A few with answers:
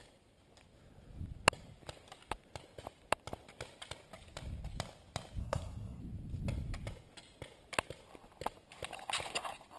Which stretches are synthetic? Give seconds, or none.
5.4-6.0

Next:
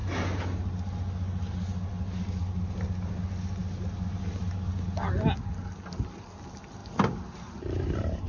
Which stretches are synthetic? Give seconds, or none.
none